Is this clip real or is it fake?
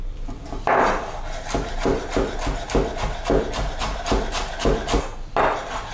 real